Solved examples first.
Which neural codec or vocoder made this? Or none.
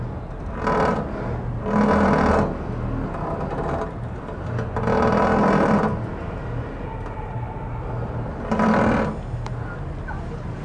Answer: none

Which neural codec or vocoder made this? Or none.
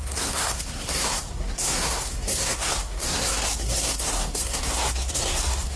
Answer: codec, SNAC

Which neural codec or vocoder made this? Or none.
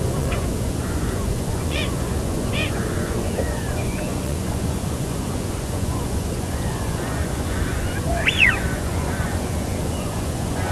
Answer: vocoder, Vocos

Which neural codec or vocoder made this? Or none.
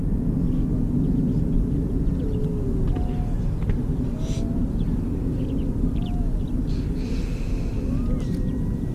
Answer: none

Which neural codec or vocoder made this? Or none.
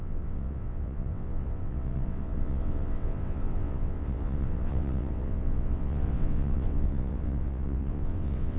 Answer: vocoder, WaveNeXt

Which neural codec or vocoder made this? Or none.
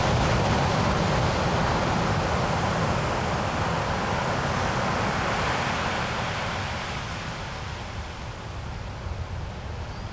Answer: none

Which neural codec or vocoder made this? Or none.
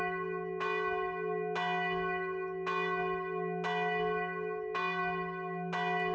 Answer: none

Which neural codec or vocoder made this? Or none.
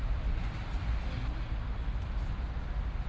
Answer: none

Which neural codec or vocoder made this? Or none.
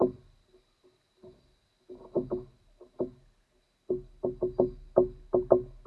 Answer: none